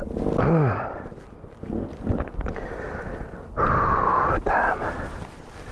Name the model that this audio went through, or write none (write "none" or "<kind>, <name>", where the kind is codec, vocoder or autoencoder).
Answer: none